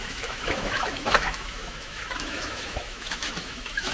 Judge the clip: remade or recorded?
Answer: remade